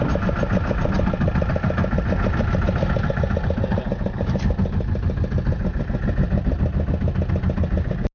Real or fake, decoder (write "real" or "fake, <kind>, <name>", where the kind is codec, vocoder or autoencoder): real